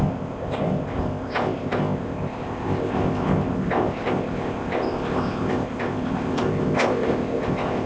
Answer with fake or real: fake